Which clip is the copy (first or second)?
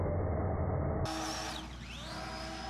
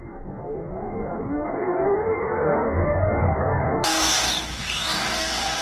second